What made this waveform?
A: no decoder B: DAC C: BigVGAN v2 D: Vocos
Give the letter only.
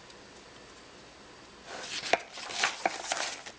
A